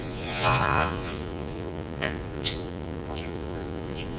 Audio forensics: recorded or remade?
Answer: remade